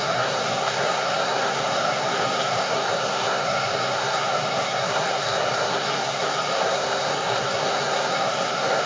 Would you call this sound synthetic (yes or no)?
yes